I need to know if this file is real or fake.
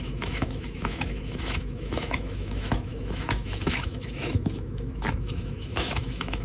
fake